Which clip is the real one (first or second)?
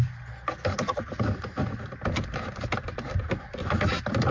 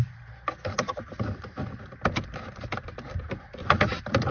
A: first